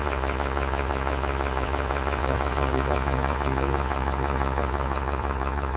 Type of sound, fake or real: fake